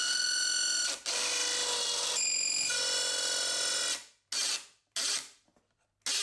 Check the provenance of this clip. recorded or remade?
recorded